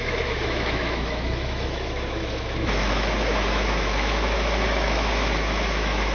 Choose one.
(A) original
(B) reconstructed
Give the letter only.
B